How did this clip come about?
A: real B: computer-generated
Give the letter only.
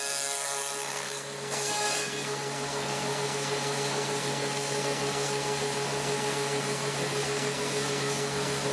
B